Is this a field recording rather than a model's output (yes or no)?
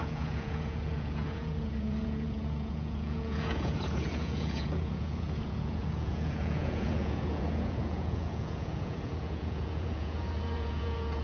no